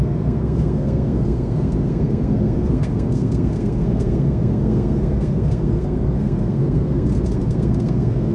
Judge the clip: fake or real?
fake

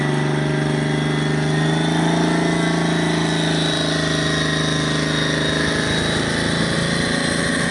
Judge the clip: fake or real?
real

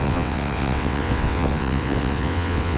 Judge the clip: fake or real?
fake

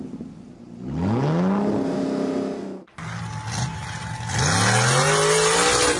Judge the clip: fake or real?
real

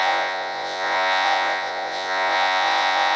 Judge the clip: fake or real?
fake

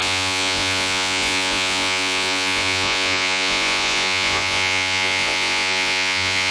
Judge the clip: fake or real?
fake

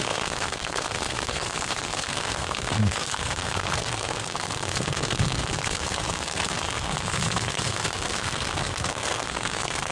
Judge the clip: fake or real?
fake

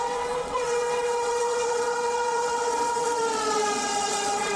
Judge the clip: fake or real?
fake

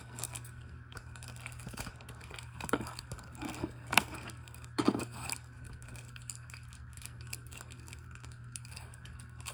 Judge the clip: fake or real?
fake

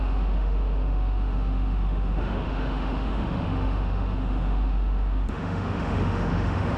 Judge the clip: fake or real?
fake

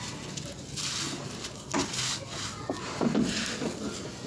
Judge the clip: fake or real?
real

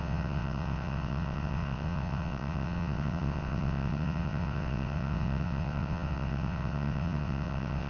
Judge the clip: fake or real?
fake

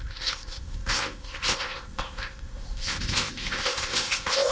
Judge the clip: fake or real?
fake